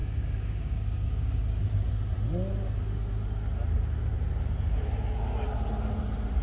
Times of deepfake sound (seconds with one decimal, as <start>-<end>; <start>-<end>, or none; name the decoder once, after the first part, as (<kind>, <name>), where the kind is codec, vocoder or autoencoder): 0.0-1.9 (codec, DAC)